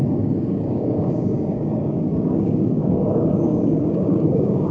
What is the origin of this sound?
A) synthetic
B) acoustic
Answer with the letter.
A